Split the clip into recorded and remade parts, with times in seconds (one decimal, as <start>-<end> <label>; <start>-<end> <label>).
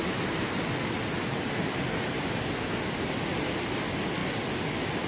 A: 0.0-5.1 recorded